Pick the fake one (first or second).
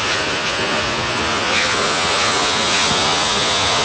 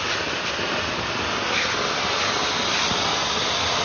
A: first